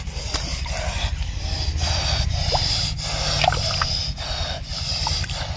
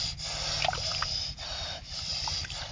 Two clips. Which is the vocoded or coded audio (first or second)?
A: second